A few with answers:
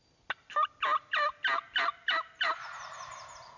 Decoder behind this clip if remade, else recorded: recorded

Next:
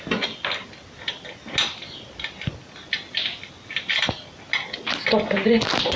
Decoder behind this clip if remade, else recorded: recorded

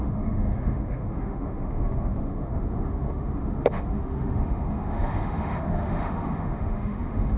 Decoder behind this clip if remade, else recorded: remade, autoencoder, DAC-VAE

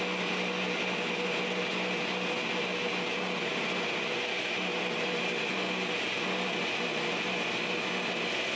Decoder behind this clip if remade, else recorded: recorded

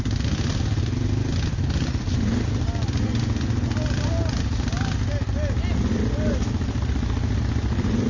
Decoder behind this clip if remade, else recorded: recorded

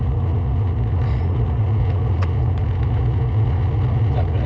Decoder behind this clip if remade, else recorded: remade, vocoder, Vocos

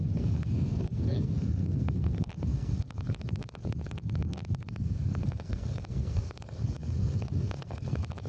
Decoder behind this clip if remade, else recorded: remade, codec, SNAC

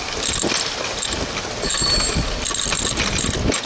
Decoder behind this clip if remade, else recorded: recorded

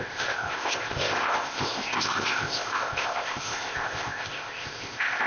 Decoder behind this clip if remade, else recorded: remade, codec, ZipCodec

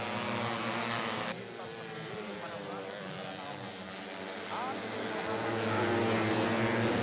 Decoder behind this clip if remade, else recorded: recorded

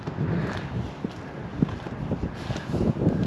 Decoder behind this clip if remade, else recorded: recorded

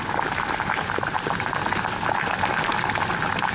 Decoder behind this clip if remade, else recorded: recorded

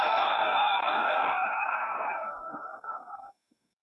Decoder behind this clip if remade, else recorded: remade, codec, DAC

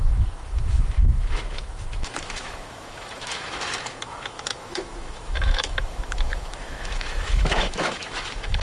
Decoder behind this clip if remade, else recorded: remade, autoencoder, DAC-VAE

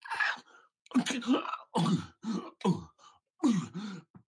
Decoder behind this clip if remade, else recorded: recorded